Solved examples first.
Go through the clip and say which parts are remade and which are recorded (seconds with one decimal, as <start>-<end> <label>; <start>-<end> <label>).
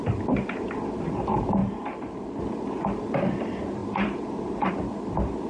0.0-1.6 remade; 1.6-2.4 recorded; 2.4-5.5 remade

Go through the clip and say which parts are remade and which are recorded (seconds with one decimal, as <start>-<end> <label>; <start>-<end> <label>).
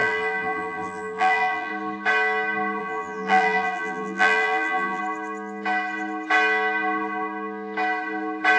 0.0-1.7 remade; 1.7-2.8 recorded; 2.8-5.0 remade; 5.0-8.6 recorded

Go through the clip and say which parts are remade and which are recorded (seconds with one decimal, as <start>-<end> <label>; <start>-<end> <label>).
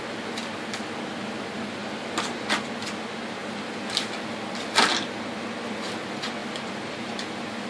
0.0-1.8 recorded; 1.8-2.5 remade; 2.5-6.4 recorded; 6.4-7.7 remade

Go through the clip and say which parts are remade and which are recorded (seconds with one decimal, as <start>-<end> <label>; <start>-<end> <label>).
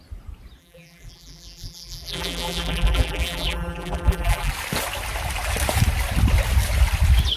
0.0-0.6 recorded; 0.6-4.5 remade; 4.5-7.4 recorded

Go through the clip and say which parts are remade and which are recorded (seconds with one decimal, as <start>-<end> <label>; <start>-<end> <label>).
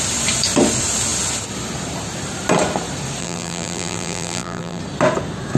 0.0-3.2 recorded; 3.2-4.8 remade; 4.8-5.6 recorded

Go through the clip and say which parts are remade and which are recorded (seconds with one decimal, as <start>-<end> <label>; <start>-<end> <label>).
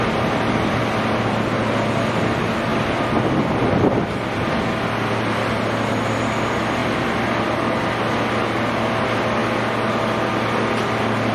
0.0-11.3 recorded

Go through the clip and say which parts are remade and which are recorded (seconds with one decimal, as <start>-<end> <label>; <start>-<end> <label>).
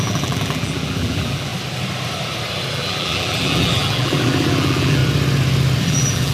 0.0-1.5 remade; 1.5-2.7 recorded; 2.7-5.0 remade; 5.0-5.8 recorded; 5.8-6.3 remade